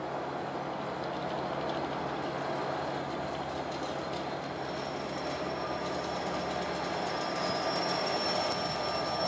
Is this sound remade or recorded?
recorded